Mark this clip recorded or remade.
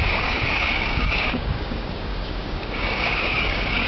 remade